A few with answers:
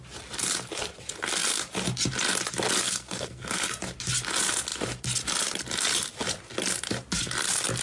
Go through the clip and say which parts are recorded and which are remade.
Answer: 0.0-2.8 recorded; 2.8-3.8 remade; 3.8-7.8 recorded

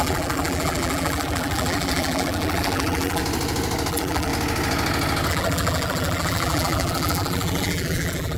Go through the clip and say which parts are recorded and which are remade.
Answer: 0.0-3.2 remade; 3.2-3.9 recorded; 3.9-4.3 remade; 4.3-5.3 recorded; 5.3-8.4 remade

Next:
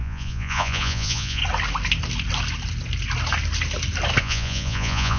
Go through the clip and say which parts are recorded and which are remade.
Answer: 0.0-1.4 remade; 1.4-4.2 recorded; 4.2-5.2 remade

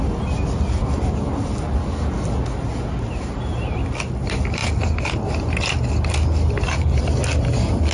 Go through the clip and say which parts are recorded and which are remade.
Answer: 0.0-7.9 recorded

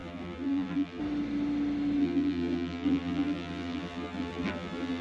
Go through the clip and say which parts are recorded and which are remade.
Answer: 0.0-1.0 remade; 1.0-2.0 recorded; 2.0-5.0 remade